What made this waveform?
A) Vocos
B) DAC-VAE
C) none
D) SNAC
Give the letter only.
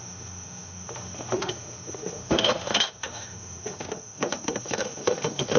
B